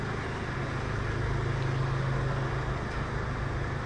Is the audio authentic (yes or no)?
yes